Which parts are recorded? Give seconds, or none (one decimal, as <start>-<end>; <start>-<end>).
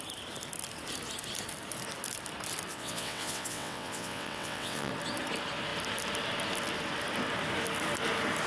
0.0-2.7; 4.9-8.5